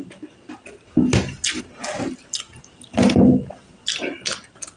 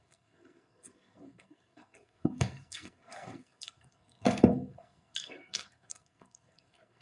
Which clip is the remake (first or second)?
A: second